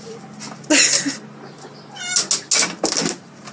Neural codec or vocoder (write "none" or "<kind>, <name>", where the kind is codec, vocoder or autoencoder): none